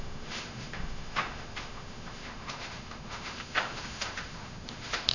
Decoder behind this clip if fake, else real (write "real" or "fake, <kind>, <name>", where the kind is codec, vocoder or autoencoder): fake, autoencoder, DAC-VAE